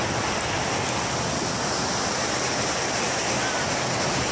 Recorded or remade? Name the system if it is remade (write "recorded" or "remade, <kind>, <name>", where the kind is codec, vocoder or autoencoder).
recorded